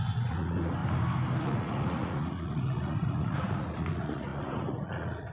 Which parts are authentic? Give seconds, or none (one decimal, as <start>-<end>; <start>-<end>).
0.8-1.4